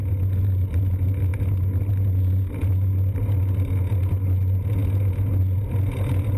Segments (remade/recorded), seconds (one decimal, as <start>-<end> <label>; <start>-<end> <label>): 0.0-6.4 recorded